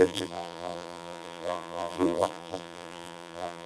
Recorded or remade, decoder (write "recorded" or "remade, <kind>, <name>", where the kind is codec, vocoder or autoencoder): remade, vocoder, BigVGAN v2